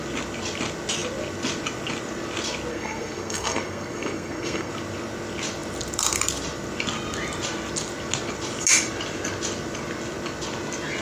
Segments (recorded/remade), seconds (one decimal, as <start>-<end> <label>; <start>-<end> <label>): 0.0-2.7 recorded; 2.7-4.7 remade; 4.7-11.0 recorded